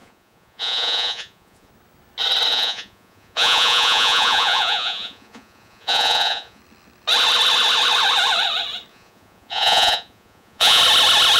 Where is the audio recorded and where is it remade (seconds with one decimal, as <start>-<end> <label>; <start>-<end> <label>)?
0.0-1.7 remade; 1.7-2.5 recorded; 2.5-6.6 remade; 6.6-8.9 recorded; 8.9-10.8 remade; 10.8-11.4 recorded